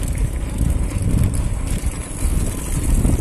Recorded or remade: recorded